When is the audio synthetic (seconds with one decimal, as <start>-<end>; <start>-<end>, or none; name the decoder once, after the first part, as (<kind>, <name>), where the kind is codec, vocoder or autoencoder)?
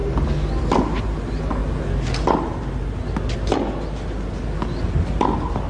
none